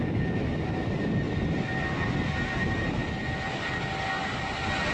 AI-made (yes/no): no